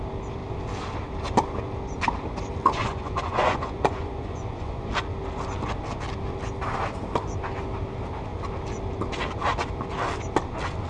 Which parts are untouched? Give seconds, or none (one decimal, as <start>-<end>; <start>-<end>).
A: 0.0-2.8; 4.9-10.9